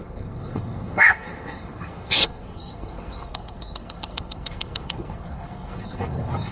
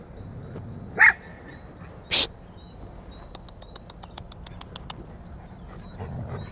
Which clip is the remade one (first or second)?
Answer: first